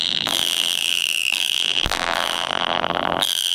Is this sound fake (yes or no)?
yes